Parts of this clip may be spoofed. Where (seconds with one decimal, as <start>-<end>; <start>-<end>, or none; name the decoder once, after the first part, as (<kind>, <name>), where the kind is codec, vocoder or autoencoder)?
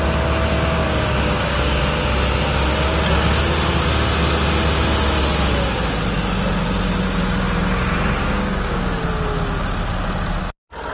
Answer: 0.8-1.8 (codec, DAC); 8.2-9.0